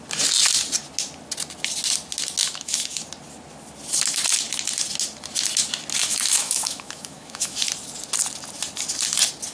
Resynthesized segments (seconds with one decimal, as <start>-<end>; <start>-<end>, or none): 2.4-3.0; 6.0-7.6